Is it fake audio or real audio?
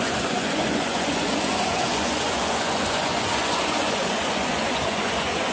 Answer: fake